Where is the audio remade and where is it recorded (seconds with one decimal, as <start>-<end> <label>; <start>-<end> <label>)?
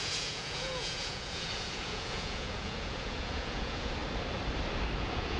0.0-4.0 remade; 4.0-5.0 recorded; 5.0-5.4 remade